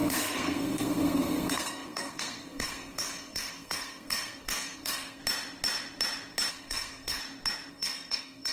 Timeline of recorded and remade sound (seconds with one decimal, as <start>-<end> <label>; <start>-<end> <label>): 0.0-5.2 remade; 5.2-6.5 recorded; 6.5-7.2 remade; 7.2-7.7 recorded; 7.7-8.5 remade